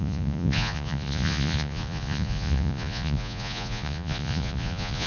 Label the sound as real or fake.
fake